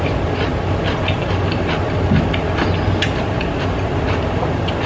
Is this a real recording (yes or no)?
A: yes